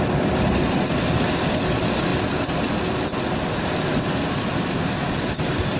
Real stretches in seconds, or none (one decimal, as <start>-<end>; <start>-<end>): 0.0-5.8